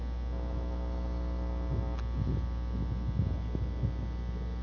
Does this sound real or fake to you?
real